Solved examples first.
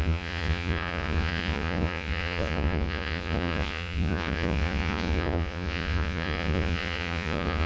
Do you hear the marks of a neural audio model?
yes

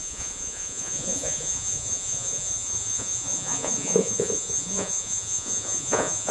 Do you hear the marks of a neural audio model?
yes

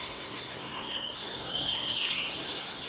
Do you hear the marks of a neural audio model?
yes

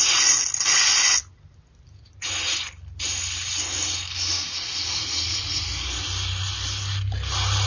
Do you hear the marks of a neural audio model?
no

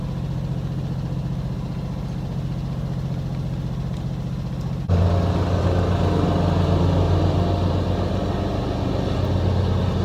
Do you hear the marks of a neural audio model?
no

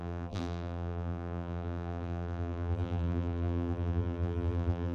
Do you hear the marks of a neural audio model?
yes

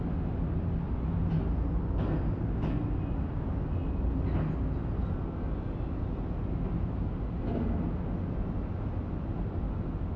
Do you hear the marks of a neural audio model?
no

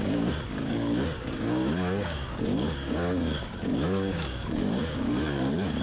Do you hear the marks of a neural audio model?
yes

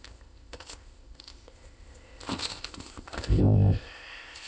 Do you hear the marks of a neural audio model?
yes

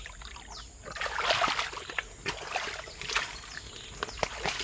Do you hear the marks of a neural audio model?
no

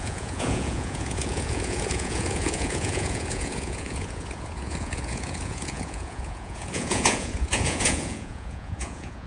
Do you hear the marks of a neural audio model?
yes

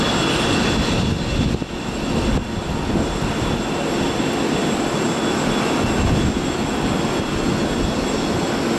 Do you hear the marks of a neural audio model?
no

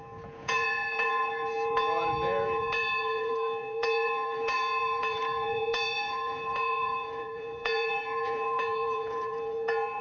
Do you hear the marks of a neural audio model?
yes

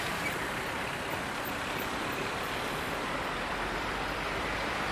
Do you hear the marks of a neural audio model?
yes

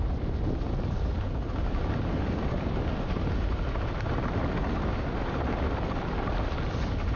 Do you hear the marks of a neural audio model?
no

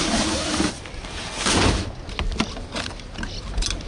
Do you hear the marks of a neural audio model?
no